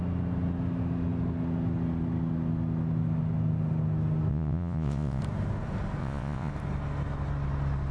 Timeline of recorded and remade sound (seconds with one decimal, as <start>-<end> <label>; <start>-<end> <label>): 0.0-4.3 recorded; 4.3-5.2 remade; 5.2-6.0 recorded; 6.0-6.5 remade; 6.5-7.9 recorded